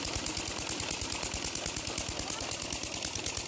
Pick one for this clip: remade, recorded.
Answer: recorded